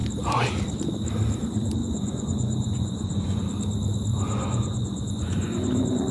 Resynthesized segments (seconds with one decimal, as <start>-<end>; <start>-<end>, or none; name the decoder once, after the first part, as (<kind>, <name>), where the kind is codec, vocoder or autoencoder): 1.8-3.4 (vocoder, Vocos); 4.1-6.1